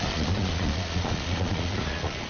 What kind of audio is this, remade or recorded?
remade